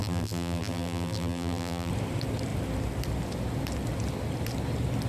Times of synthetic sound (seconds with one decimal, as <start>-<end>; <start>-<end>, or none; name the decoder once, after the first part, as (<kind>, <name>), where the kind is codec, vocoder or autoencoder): 0.0-1.9 (vocoder, BigVGAN v2)